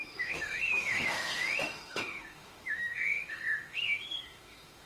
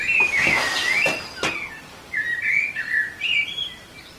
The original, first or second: second